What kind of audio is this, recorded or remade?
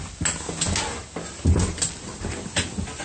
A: recorded